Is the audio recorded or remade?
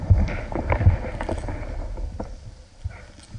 recorded